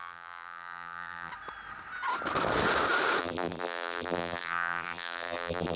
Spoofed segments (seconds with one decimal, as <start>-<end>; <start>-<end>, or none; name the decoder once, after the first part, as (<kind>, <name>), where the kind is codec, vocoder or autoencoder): 0.0-1.3 (vocoder, BigVGAN v2); 3.2-5.8